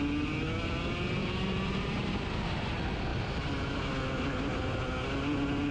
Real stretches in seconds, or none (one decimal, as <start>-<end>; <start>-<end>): 0.0-1.2; 2.3-3.1; 3.8-5.7

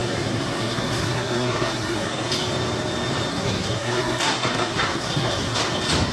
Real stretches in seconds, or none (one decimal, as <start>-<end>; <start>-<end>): 2.3-3.3; 5.6-6.1